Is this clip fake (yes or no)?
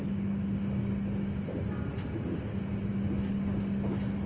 no